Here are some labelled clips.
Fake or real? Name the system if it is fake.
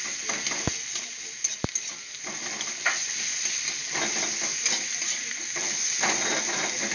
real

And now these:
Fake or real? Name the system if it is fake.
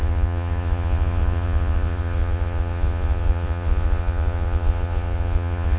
fake, vocoder, Vocos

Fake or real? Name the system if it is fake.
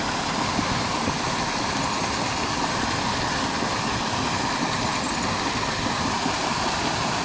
real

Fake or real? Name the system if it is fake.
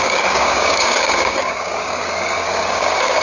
fake, codec, DAC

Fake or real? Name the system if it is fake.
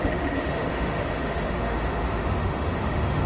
fake, autoencoder, DAC-VAE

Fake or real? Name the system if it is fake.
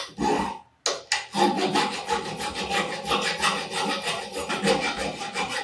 real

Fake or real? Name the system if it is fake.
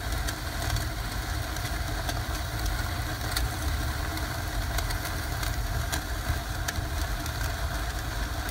real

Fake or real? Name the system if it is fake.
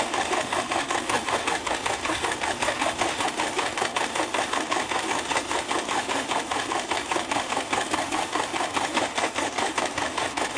fake, autoencoder, DAC-VAE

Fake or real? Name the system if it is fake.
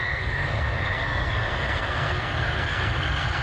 fake, codec, SNAC